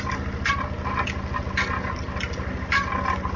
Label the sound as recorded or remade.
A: recorded